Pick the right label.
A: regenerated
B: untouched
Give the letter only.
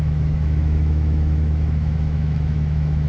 A